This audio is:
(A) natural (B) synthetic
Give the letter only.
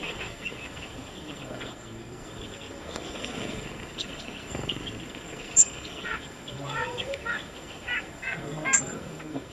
B